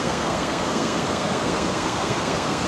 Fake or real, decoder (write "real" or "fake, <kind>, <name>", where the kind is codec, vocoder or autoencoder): fake, codec, SNAC